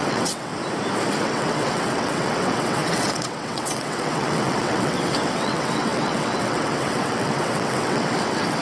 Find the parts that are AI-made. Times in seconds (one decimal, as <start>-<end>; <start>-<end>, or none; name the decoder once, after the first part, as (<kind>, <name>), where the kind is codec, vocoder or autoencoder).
0.0-0.5 (vocoder, WaveNeXt); 1.2-8.6